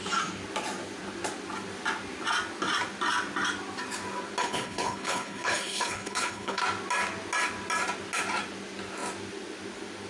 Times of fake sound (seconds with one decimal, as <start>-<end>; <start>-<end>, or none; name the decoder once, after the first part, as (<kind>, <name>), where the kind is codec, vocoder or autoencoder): 4.4-6.6 (codec, HILCodec)